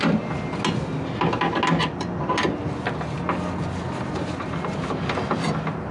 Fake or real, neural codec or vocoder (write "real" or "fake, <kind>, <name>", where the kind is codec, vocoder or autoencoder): real